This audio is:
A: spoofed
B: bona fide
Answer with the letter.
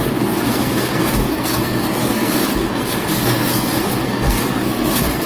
A